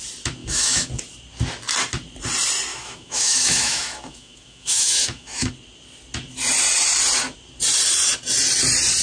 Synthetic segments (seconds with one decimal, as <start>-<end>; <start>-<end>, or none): 0.4-0.9; 2.7-5.5